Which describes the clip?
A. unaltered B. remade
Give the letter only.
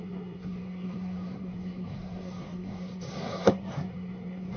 B